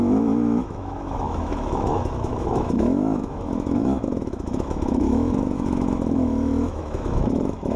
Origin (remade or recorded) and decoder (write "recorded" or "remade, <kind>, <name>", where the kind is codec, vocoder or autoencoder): remade, autoencoder, DAC-VAE